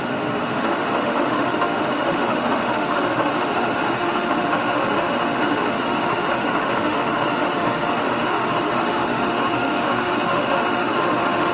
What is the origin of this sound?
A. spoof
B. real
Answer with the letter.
A